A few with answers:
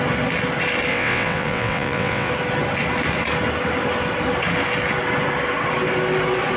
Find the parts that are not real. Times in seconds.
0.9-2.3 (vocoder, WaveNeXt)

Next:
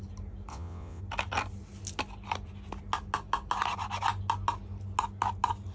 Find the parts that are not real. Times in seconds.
0.5-1.0 (vocoder, WaveNeXt)

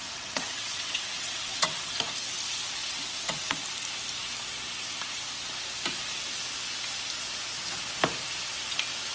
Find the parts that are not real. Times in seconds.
0.0-2.0 (vocoder, WaveNeXt); 2.8-3.6

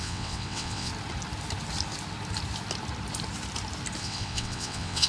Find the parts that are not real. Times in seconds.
0.0-0.9 (vocoder, WaveNeXt); 4.0-5.1

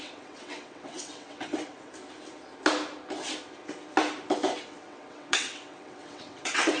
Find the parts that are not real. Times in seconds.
0.0-1.9 (vocoder, WaveNeXt); 4.6-6.8

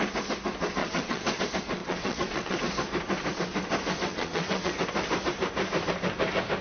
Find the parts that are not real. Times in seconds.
0.8-1.4 (vocoder, WaveNeXt); 1.8-2.6; 4.1-4.7

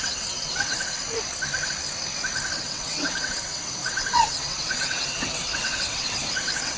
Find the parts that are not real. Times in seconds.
0.0-1.0 (vocoder, WaveNeXt); 2.6-6.8

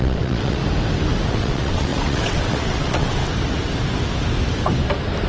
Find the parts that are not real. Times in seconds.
0.0-0.6 (vocoder, WaveNeXt); 1.3-3.2